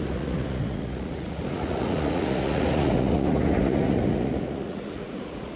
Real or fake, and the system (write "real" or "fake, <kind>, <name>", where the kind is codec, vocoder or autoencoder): fake, vocoder, Vocos